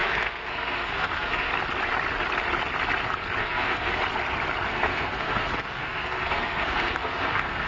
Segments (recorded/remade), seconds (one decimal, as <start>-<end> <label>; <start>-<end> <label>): 0.0-1.5 remade; 1.5-3.4 recorded; 3.4-4.0 remade; 4.0-4.7 recorded; 4.7-7.7 remade